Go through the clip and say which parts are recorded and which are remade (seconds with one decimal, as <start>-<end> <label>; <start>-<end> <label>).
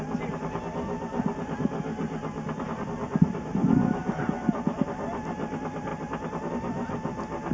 0.0-4.0 recorded; 4.0-5.5 remade; 5.5-7.5 recorded